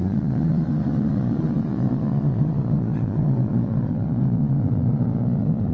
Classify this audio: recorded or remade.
remade